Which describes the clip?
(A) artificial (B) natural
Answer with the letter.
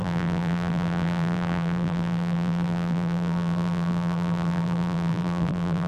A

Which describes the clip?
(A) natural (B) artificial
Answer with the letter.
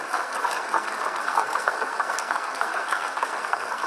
B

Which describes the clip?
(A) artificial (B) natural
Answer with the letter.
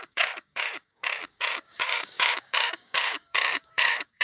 A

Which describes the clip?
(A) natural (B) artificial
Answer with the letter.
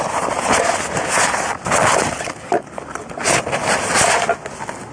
A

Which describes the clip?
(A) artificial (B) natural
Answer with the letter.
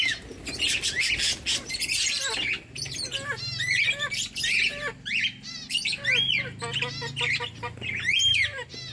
B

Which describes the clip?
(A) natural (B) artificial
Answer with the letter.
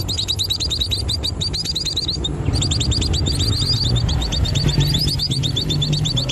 A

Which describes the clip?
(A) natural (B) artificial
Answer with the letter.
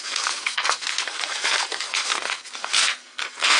B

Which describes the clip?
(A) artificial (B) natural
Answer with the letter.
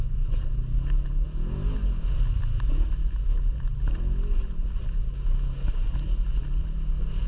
B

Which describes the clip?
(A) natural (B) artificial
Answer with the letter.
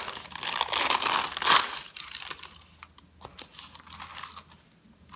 A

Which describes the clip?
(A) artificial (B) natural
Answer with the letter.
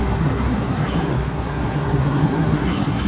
A